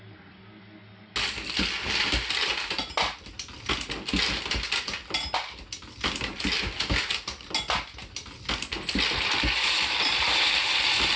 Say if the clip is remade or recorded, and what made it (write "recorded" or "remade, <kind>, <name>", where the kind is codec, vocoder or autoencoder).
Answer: recorded